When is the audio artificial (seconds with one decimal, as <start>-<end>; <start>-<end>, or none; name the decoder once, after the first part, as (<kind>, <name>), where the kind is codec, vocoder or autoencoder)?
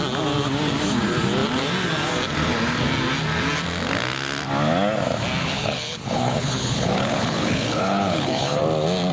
5.4-8.6 (codec, HILCodec)